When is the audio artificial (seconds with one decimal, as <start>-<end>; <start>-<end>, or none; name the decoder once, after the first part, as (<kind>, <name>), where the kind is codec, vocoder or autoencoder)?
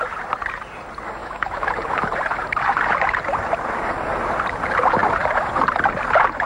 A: 1.2-1.7 (autoencoder, DAC-VAE)